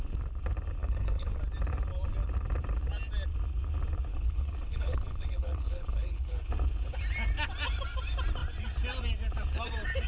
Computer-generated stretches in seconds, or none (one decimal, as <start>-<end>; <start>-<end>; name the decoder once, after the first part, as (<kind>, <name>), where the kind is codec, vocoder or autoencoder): 0.8-1.3 (codec, HILCodec); 4.1-6.5